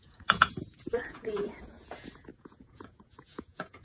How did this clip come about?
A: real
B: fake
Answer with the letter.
B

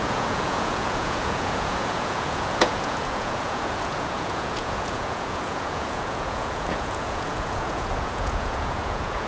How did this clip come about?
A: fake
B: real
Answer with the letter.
A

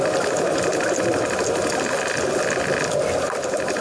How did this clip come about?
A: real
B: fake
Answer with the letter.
A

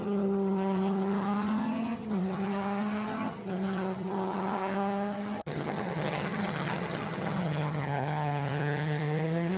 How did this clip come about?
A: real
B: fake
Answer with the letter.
B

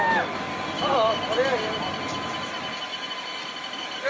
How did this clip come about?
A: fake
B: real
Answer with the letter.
B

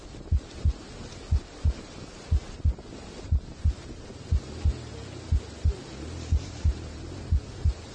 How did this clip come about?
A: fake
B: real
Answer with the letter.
B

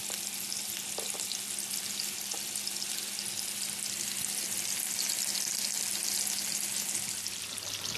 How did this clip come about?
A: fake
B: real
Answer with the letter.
B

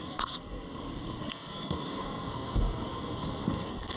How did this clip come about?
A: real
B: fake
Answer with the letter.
B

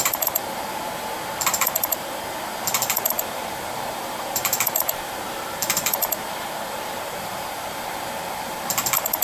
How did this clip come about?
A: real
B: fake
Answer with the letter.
B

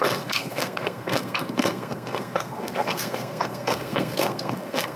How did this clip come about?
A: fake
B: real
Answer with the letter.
A